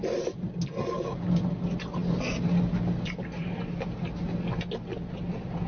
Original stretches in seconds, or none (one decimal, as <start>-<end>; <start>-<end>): 0.0-5.7